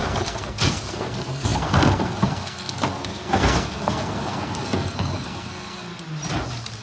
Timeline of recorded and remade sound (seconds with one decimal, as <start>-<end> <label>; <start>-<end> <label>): 0.0-5.9 remade; 5.9-6.8 recorded